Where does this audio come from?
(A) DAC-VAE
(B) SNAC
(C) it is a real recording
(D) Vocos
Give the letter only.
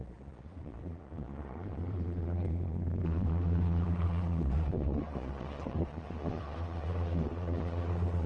D